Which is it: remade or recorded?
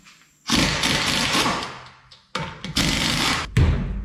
recorded